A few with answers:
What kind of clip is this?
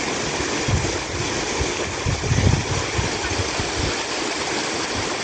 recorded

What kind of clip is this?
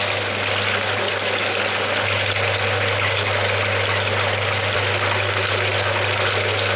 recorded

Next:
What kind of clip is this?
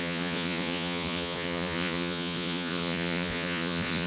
remade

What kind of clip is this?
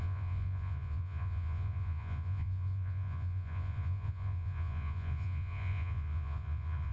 remade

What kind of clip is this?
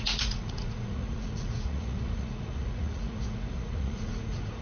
remade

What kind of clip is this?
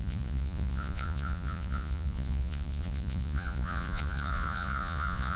remade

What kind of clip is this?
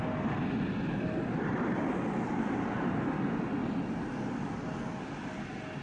recorded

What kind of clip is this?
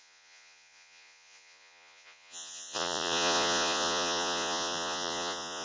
remade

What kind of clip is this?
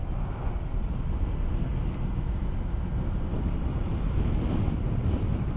recorded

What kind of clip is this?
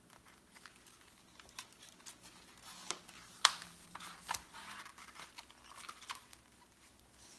recorded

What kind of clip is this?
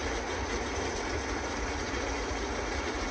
remade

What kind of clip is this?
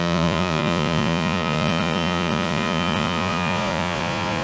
remade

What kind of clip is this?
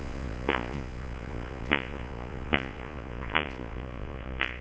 remade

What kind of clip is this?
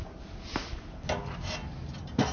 recorded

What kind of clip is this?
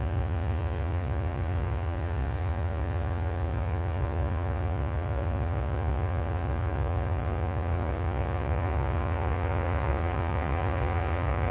remade